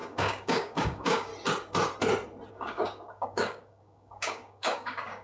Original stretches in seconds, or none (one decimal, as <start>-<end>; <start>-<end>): 1.3-2.5